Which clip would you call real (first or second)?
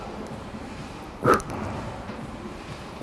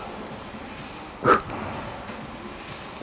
second